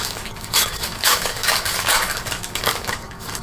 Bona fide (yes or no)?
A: no